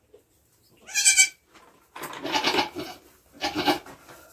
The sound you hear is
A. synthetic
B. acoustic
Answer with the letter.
B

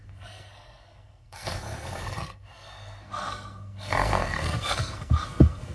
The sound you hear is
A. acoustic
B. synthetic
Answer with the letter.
B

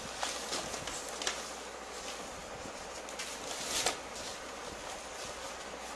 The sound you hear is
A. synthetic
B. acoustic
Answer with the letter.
B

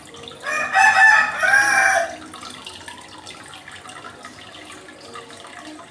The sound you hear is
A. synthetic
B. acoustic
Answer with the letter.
B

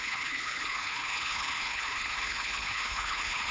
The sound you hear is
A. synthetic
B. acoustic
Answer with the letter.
A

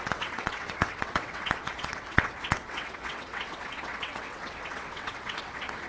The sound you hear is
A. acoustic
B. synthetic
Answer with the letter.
B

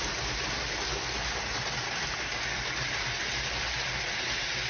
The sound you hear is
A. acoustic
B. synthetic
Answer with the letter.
A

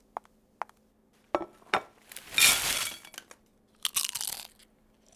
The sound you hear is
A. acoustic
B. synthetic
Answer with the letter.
A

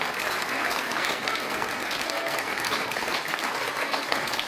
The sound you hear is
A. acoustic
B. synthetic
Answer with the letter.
B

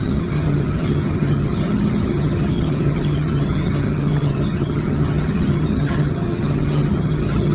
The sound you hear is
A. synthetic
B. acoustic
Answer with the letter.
A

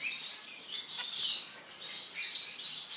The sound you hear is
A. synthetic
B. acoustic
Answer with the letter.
B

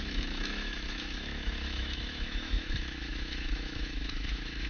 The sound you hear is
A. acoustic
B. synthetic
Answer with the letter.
B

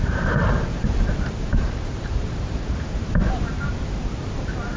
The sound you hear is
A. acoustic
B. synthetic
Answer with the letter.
B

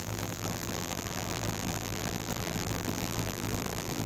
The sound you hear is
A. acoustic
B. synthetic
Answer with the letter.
B